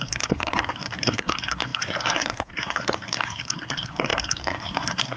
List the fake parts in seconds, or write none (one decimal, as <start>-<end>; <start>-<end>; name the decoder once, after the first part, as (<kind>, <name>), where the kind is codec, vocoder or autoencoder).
0.0-5.2 (codec, SNAC)